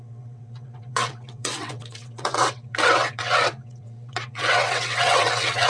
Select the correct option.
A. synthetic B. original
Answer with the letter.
A